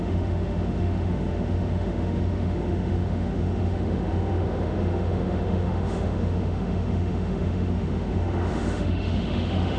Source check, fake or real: fake